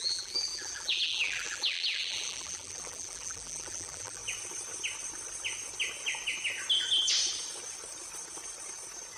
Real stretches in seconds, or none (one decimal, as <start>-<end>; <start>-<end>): 4.2-9.2